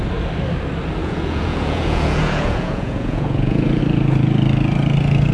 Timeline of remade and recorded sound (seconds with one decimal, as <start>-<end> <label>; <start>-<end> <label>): 0.0-1.0 recorded; 1.0-3.8 remade; 3.8-5.3 recorded